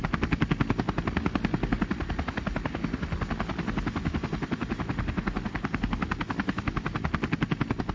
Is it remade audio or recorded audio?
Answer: recorded